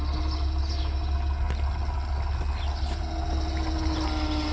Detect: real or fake real